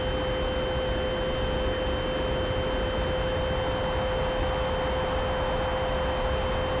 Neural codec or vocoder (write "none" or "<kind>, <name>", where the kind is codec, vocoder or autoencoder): none